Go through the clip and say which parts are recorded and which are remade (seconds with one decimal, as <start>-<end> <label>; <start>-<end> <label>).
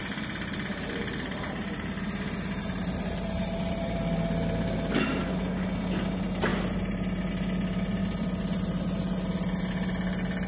0.0-4.0 remade; 4.0-10.5 recorded